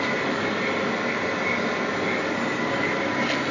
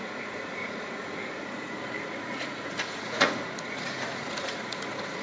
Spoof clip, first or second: second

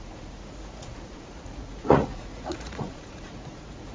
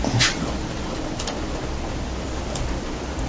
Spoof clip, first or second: first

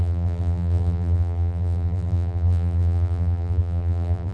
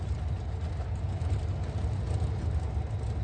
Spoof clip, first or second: first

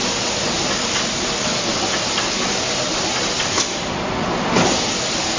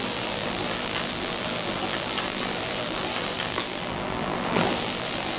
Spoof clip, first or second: second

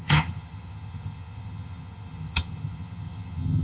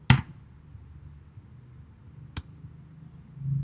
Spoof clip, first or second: first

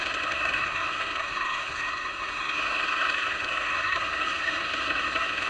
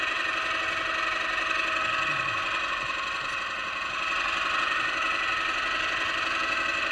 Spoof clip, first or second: first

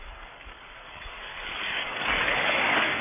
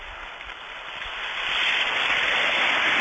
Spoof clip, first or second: first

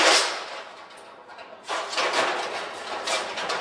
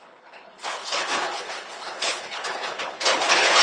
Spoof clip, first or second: second